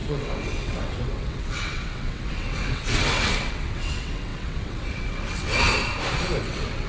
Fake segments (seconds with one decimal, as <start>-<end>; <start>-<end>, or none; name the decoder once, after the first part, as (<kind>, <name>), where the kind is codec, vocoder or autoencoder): 0.0-5.7 (vocoder, WaveNeXt); 6.4-6.9